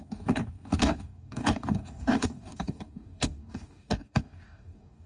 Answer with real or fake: fake